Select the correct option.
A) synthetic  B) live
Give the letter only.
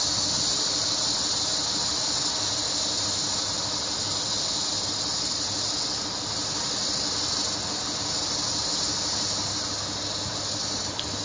B